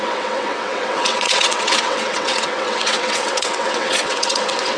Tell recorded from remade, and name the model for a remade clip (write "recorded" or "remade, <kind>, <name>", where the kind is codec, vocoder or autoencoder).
remade, vocoder, WaveNeXt